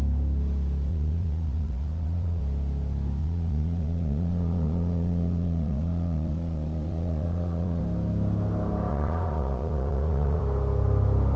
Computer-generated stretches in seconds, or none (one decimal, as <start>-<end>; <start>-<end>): 0.9-2.4; 3.2-7.8; 8.9-10.4

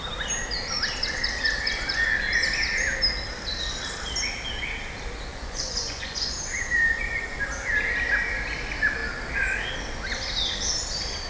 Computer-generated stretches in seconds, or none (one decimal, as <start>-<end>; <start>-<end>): 5.3-7.4

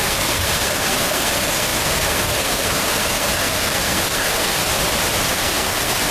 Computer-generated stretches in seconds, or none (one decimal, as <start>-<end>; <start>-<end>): 0.0-4.6; 5.3-6.1

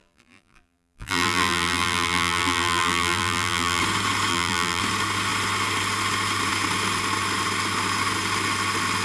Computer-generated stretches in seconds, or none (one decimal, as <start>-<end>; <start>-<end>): 0.0-3.8; 4.3-4.8

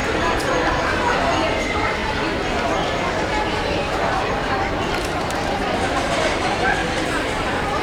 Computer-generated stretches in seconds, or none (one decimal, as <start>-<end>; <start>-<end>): 0.0-2.0; 4.1-7.8

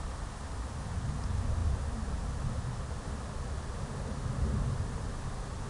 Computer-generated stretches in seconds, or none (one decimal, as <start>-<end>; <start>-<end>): none

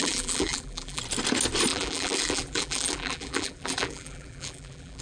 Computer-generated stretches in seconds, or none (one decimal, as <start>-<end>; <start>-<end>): 0.0-1.0; 1.7-5.0

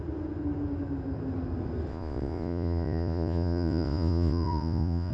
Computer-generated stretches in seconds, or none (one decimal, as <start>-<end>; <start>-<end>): 1.9-5.1